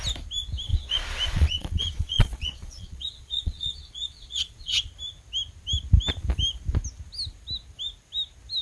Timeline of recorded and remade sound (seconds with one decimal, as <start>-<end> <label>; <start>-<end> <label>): 0.0-0.7 recorded; 0.7-4.9 remade; 4.9-8.6 recorded